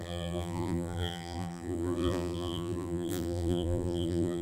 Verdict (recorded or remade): remade